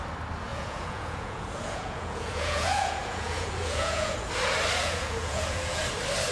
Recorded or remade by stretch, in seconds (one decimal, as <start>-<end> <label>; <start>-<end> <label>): 0.0-0.5 recorded; 0.5-4.3 remade; 4.3-4.8 recorded; 4.8-5.8 remade; 5.8-6.3 recorded